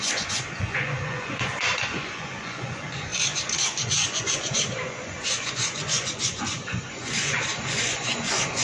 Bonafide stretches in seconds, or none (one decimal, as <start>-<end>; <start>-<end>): none